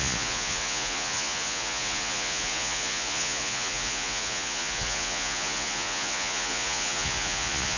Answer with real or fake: fake